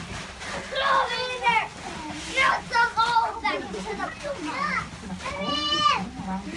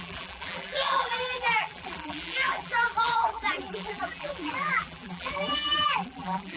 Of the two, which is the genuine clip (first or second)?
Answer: first